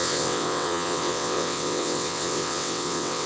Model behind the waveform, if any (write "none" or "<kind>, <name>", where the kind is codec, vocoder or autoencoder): vocoder, WaveNeXt